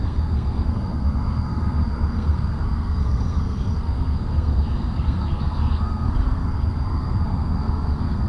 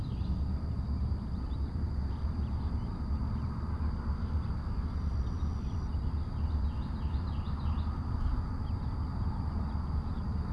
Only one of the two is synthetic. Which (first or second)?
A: first